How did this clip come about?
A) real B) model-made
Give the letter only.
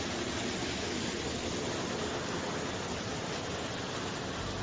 A